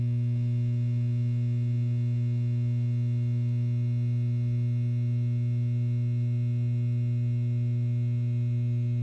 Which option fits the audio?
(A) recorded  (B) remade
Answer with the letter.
A